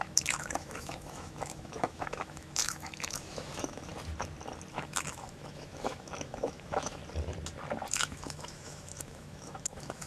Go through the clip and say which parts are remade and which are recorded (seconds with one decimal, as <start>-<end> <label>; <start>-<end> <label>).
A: 0.0-3.9 remade; 3.9-4.7 recorded; 4.7-7.0 remade; 7.0-7.9 recorded; 7.9-10.1 remade